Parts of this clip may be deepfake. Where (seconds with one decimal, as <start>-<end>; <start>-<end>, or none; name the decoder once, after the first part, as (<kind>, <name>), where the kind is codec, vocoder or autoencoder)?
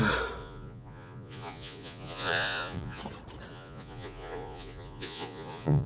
0.4-3.0 (vocoder, Vocos); 3.5-5.9